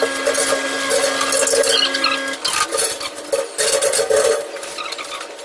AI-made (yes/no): no